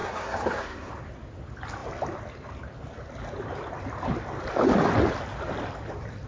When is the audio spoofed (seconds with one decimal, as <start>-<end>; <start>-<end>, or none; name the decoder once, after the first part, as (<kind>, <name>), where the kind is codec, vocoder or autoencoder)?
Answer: 0.0-0.9 (codec, SNAC)